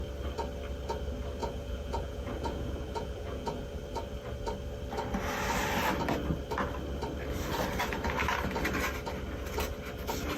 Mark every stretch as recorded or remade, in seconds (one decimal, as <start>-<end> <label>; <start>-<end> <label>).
0.0-1.4 recorded; 1.4-3.7 remade; 3.7-10.4 recorded